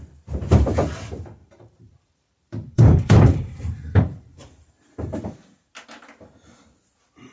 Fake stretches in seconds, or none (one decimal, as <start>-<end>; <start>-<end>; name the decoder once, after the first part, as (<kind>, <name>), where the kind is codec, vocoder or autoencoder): 1.4-4.7 (vocoder, BigVGAN v2)